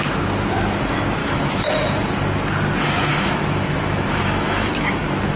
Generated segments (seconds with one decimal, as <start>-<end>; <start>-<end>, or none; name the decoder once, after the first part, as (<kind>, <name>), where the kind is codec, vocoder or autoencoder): 1.2-2.0 (autoencoder, DAC-VAE); 3.1-5.0